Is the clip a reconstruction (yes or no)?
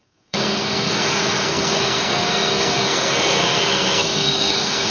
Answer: yes